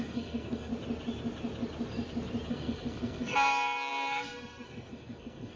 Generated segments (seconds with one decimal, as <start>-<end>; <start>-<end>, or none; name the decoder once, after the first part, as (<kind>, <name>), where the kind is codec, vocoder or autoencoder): 0.0-0.7 (codec, SNAC); 2.5-5.6